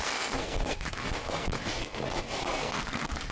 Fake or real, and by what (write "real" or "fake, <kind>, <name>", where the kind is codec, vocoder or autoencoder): fake, codec, SNAC